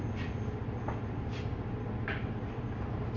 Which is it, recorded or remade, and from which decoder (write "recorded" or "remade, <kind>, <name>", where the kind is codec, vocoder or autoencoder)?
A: recorded